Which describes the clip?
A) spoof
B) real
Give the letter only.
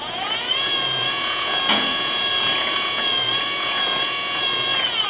A